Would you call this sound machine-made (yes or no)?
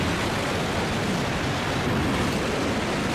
no